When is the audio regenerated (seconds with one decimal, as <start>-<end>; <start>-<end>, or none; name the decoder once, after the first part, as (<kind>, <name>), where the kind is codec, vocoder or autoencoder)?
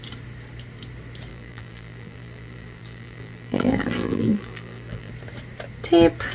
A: 1.3-5.1 (vocoder, BigVGAN v2)